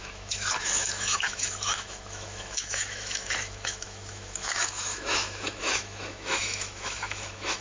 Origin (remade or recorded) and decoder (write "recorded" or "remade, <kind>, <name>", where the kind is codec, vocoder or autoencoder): remade, autoencoder, DAC-VAE